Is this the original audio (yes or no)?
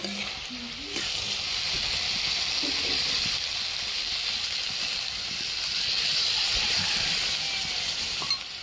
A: yes